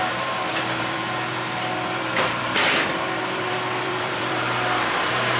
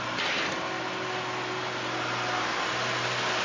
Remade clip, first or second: first